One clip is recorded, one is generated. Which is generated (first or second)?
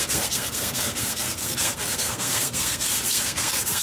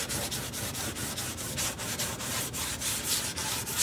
first